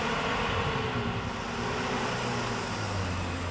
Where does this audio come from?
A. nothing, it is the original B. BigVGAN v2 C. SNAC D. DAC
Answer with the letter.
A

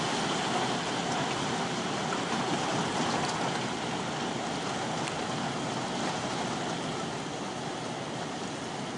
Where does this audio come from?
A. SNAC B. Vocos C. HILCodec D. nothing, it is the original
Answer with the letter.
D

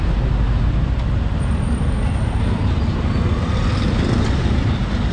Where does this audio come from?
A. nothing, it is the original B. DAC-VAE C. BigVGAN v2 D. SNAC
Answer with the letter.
A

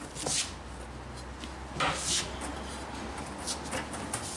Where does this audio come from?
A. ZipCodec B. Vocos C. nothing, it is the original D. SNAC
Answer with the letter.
C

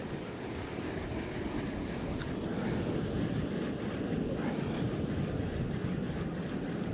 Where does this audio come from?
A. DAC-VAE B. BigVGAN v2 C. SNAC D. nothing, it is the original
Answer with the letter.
D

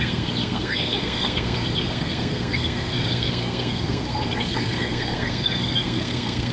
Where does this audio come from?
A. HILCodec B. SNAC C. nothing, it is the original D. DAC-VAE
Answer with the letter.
B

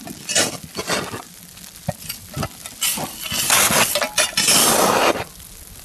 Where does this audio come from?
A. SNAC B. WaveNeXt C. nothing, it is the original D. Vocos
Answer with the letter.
C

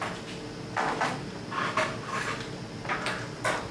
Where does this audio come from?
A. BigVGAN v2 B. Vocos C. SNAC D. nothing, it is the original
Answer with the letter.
D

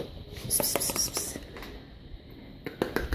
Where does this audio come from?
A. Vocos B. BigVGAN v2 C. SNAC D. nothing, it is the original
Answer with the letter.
D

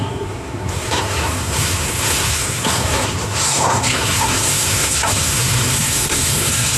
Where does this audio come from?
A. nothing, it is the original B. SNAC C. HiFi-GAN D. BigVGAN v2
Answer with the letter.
B